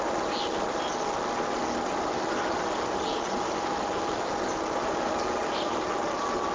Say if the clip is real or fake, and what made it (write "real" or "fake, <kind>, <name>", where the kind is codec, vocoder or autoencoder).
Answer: real